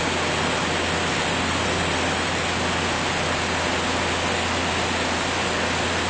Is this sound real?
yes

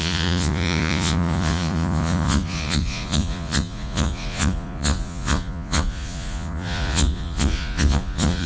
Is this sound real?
no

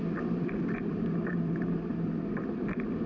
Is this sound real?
no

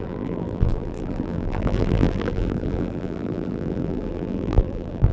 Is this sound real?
no